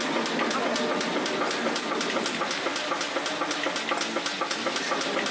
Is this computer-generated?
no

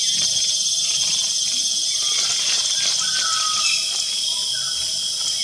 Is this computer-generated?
no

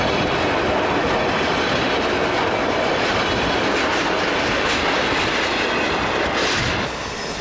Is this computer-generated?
no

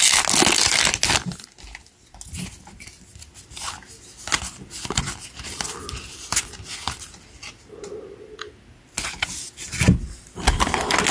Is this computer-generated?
no